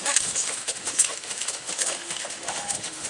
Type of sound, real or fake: fake